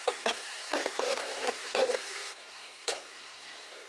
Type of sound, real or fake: fake